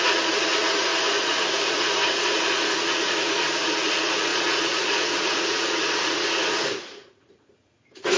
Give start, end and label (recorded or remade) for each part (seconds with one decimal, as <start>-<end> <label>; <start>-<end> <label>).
0.0-8.2 remade